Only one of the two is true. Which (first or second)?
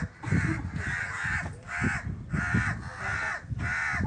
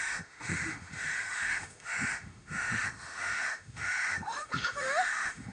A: first